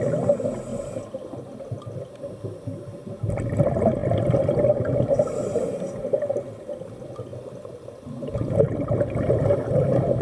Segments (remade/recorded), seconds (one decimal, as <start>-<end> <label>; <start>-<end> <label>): 0.0-10.2 recorded